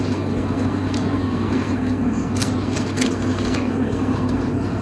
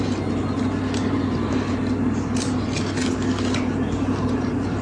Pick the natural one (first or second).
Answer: second